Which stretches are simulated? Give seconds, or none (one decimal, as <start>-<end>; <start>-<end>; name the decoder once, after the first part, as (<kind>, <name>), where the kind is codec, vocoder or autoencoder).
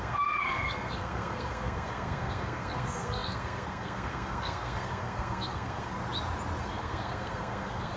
0.0-6.0 (codec, SNAC); 6.6-8.0